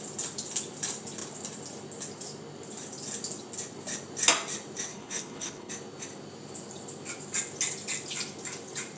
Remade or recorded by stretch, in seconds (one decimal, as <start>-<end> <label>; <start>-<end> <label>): 0.0-4.9 recorded; 4.9-5.7 remade; 5.7-9.0 recorded